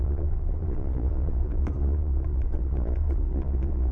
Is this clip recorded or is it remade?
remade